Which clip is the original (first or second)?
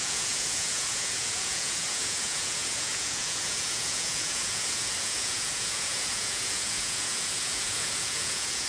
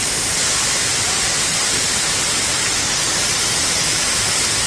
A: second